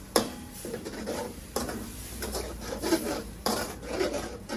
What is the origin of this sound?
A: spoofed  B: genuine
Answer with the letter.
A